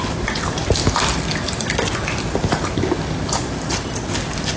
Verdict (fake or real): real